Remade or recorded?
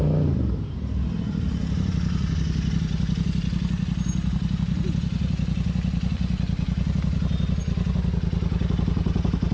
recorded